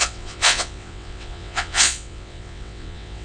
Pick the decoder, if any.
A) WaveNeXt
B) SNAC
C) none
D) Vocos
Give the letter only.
A